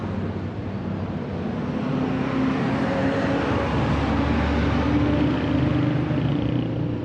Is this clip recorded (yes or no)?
yes